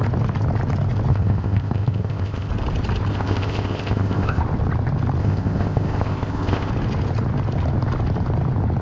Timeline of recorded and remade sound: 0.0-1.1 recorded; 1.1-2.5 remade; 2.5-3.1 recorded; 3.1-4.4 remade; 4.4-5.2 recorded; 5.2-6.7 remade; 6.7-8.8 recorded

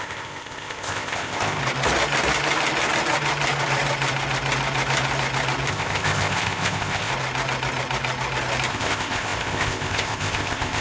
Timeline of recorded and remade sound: 0.0-1.6 remade; 1.6-5.7 recorded; 5.7-7.1 remade; 7.1-8.7 recorded; 8.7-10.8 remade